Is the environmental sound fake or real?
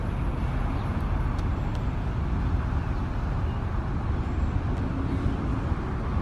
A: real